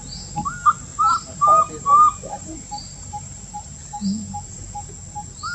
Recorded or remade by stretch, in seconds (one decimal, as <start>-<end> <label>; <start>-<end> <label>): 0.0-0.9 recorded; 0.9-3.8 remade; 3.8-5.5 recorded